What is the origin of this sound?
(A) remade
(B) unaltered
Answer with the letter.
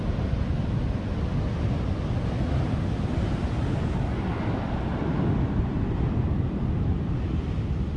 B